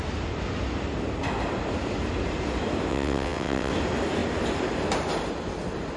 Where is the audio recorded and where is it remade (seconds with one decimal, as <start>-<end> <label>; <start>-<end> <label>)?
0.0-2.9 recorded; 2.9-3.7 remade; 3.7-6.0 recorded